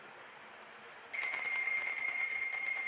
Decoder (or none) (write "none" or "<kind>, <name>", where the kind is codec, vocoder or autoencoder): none